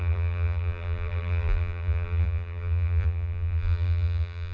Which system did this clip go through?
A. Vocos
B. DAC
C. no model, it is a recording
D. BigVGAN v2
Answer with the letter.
D